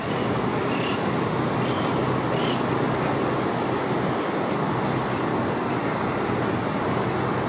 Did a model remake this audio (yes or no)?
no